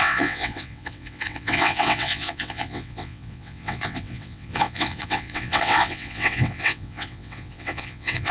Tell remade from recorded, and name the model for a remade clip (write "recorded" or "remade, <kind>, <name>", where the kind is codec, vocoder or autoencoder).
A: remade, vocoder, WaveNeXt